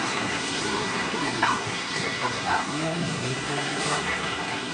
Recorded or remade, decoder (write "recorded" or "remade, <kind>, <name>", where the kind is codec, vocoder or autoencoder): remade, codec, SNAC